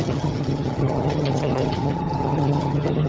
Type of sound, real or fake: fake